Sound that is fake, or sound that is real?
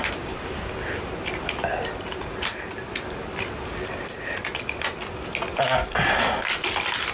real